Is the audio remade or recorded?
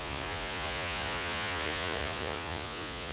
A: remade